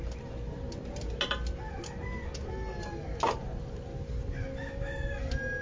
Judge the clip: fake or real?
real